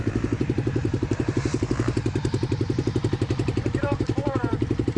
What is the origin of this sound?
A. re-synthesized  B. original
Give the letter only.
A